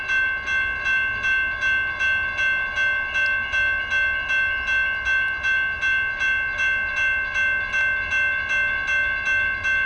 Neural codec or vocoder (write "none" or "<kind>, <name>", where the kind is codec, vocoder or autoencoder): none